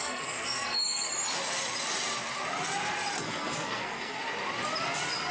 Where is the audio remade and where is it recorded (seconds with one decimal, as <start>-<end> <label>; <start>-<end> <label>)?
0.0-1.1 remade; 1.1-3.2 recorded; 3.2-4.2 remade; 4.2-5.3 recorded